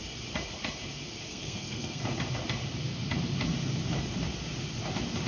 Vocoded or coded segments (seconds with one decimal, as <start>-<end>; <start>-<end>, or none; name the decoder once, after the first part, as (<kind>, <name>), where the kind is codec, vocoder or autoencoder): 1.3-2.0 (codec, SNAC)